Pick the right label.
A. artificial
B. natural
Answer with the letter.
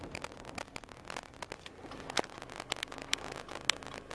B